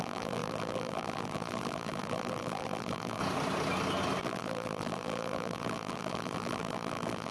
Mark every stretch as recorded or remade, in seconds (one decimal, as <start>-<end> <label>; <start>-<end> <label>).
0.0-3.2 remade; 3.2-4.2 recorded; 4.2-7.3 remade